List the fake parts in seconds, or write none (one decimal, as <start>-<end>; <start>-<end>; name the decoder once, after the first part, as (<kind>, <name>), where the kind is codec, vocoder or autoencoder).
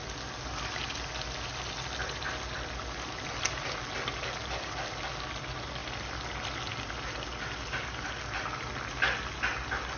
none